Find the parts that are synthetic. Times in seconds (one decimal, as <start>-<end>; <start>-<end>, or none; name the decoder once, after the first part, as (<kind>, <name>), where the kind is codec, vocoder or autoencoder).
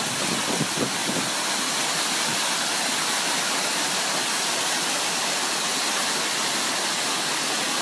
none